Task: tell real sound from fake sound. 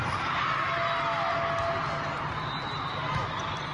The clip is real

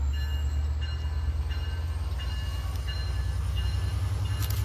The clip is real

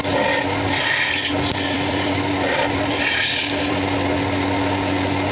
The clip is fake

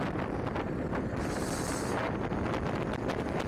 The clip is real